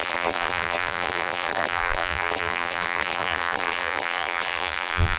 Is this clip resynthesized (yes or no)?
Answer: yes